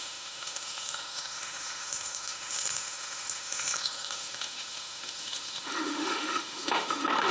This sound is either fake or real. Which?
fake